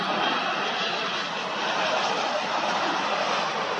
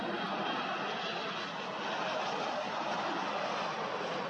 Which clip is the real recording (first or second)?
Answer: second